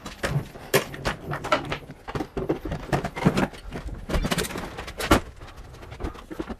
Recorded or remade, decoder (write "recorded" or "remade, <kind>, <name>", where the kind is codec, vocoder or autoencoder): recorded